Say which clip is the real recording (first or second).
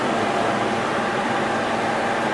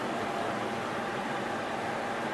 first